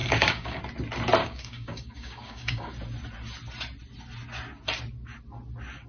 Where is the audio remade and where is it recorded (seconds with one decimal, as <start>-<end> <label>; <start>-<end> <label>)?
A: 0.0-0.6 remade; 0.6-1.2 recorded; 1.2-2.7 remade; 2.7-5.9 recorded